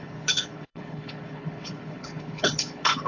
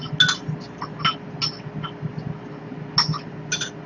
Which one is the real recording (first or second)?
second